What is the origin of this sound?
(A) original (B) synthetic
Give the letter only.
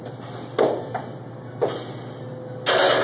A